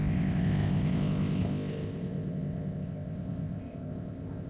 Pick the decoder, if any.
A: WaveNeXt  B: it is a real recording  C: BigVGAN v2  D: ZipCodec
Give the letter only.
D